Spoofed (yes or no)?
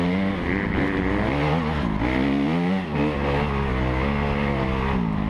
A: no